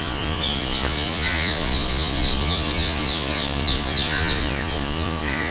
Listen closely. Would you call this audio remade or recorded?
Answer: remade